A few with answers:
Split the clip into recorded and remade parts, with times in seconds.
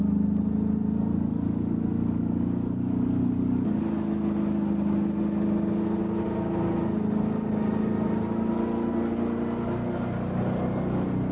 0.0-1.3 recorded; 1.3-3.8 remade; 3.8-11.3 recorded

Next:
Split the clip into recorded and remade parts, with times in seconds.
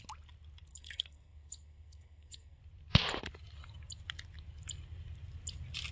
0.0-0.7 recorded; 0.7-2.6 remade; 2.6-5.9 recorded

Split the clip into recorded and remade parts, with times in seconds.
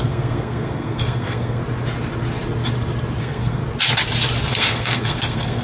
0.0-1.6 remade; 1.6-3.2 recorded; 3.2-3.6 remade; 3.6-4.5 recorded; 4.5-5.6 remade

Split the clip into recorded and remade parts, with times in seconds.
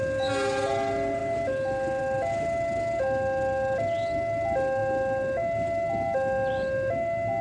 0.0-7.4 recorded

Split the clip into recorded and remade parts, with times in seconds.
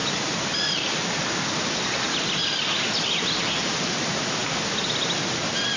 0.0-5.8 recorded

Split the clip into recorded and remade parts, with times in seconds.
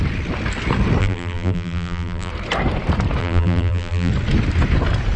0.0-1.0 recorded; 1.0-2.3 remade; 2.3-3.2 recorded; 3.2-4.1 remade; 4.1-5.2 recorded